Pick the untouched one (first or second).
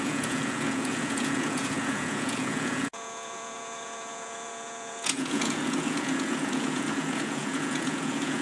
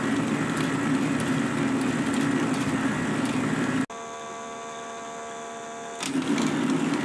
second